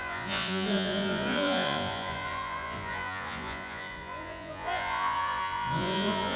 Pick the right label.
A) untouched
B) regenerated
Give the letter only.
B